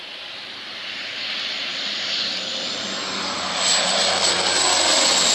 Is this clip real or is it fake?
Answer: fake